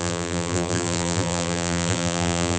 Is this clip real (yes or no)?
no